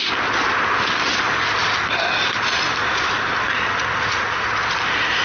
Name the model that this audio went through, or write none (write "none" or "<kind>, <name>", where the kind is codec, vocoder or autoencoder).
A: none